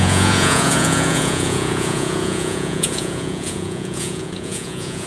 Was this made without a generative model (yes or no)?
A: no